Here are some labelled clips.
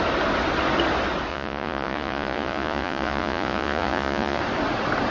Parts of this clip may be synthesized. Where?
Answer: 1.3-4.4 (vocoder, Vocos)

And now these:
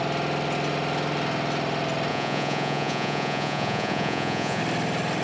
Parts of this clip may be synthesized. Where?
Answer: 2.1-4.6 (vocoder, Vocos)

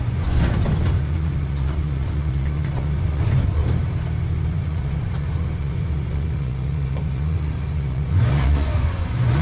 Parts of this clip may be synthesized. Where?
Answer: 0.0-3.6 (vocoder, Vocos); 4.5-9.4